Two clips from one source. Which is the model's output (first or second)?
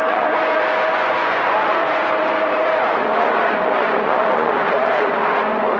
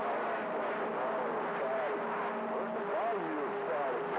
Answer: first